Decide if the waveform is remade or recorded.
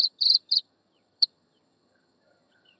remade